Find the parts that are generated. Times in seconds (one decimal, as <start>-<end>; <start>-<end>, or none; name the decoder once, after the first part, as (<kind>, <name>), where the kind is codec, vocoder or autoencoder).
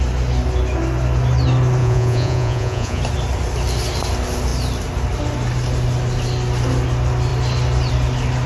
1.8-3.0 (vocoder, Vocos)